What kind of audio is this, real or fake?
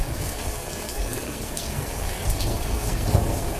fake